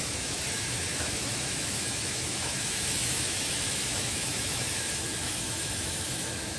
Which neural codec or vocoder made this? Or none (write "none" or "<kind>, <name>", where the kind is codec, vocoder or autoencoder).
autoencoder, DAC-VAE